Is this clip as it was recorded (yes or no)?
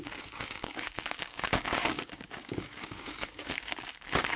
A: no